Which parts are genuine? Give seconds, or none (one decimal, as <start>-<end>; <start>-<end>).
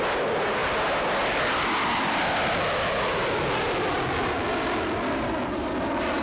0.0-6.2